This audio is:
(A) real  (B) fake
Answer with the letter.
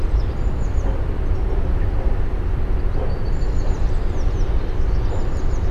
A